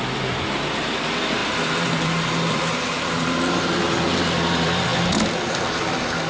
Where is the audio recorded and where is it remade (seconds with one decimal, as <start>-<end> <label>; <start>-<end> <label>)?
0.0-4.9 remade; 4.9-5.8 recorded; 5.8-6.3 remade